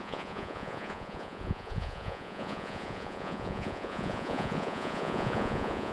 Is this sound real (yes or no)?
no